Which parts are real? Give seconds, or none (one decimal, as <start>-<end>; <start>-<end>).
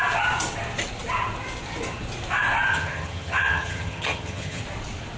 0.0-2.7; 4.6-5.2